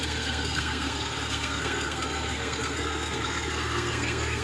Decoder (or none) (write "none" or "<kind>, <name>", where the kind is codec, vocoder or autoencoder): codec, SNAC